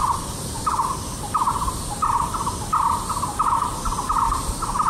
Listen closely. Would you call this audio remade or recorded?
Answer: recorded